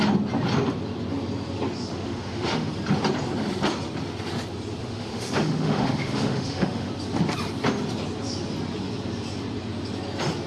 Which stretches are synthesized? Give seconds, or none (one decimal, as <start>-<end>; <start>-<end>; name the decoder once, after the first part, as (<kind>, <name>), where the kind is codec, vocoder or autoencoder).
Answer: 1.9-2.7 (autoencoder, DAC-VAE); 4.8-6.9